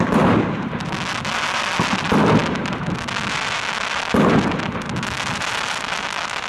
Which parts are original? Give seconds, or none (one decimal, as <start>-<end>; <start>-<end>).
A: 0.0-6.5